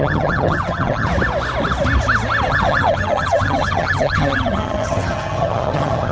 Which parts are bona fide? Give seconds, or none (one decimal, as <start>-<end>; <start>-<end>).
1.1-2.5